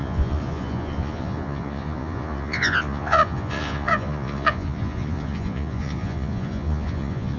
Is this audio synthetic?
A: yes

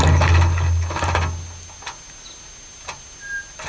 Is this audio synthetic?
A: no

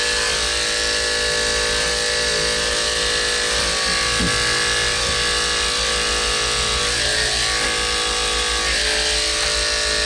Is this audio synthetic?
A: no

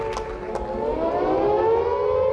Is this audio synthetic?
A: no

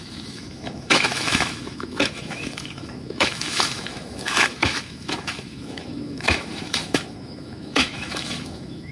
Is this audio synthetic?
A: yes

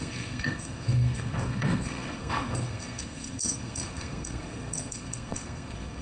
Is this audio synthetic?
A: yes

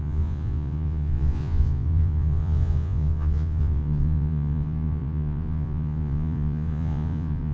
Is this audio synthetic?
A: yes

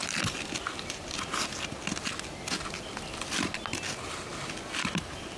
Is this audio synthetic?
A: no